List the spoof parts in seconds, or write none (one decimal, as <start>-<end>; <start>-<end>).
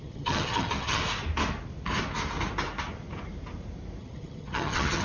0.0-1.0; 4.0-5.0